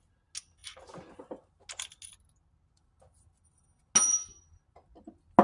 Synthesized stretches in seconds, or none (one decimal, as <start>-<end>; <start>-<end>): none